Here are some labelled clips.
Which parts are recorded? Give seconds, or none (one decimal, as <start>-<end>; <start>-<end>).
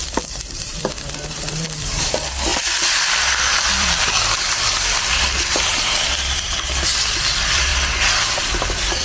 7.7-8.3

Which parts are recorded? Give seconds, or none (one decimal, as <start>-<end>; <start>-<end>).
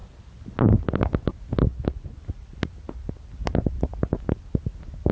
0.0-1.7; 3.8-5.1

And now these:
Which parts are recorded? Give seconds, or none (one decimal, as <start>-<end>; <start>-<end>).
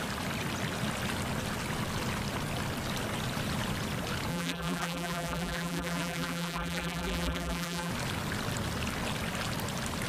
0.0-4.3; 7.9-10.1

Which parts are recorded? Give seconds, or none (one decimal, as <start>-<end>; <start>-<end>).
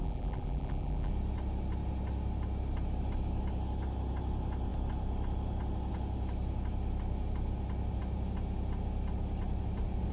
1.1-10.1